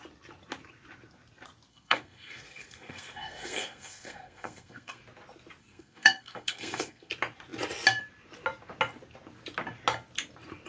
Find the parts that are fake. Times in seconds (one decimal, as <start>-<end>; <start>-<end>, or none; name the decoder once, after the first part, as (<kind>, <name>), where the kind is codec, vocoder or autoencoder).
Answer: 1.7-5.0 (codec, SNAC); 5.6-7.1